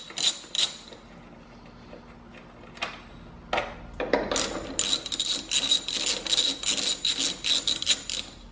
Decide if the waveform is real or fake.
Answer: real